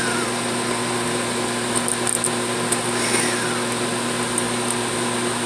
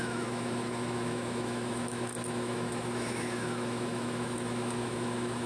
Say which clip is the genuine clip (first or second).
first